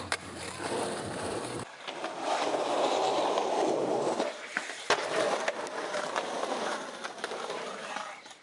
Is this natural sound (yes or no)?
no